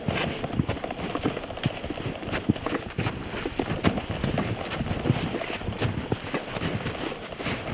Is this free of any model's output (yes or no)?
yes